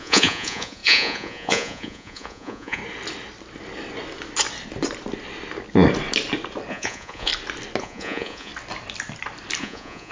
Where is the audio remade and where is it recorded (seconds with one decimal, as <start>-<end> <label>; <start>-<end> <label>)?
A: 0.0-2.8 remade; 2.8-6.7 recorded; 6.7-7.3 remade; 7.3-7.8 recorded; 7.8-8.5 remade; 8.5-9.6 recorded; 9.6-10.1 remade

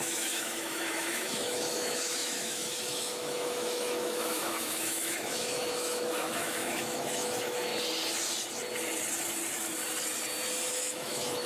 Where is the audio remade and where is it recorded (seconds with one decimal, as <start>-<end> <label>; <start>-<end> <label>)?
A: 0.0-7.7 remade; 7.7-10.7 recorded; 10.7-11.5 remade

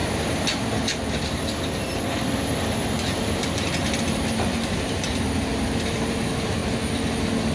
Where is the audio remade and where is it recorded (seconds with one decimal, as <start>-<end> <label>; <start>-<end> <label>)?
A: 0.0-6.6 remade; 6.6-7.5 recorded

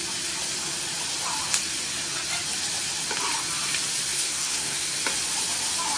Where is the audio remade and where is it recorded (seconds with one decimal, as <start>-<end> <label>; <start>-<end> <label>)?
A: 0.0-4.1 recorded; 4.1-4.9 remade; 4.9-6.0 recorded

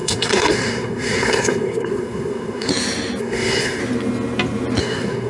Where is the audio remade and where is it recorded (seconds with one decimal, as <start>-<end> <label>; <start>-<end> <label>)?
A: 0.0-2.7 remade; 2.7-3.2 recorded; 3.2-3.8 remade; 3.8-4.8 recorded; 4.8-5.3 remade

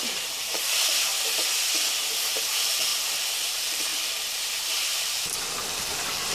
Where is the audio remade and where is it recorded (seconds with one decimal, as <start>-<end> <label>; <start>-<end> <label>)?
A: 0.0-1.1 remade; 1.1-2.2 recorded; 2.2-2.9 remade; 2.9-3.4 recorded; 3.4-3.9 remade; 3.9-5.0 recorded; 5.0-6.3 remade